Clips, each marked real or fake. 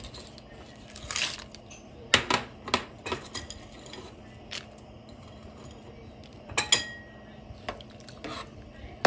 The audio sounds real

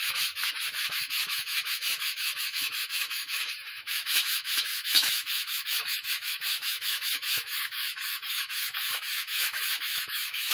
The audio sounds fake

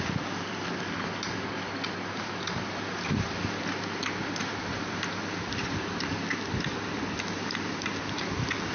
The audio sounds real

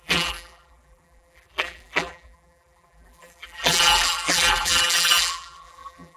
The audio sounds fake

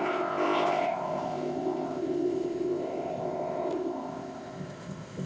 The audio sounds fake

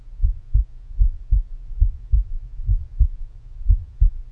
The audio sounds fake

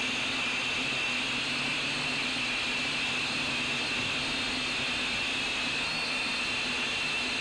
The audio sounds real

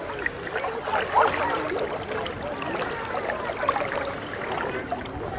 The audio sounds real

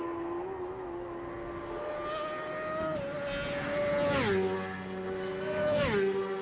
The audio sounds real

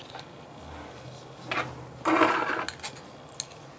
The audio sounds real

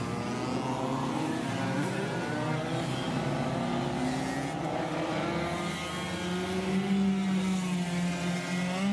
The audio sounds real